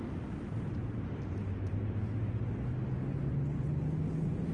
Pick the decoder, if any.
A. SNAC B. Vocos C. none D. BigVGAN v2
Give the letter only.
C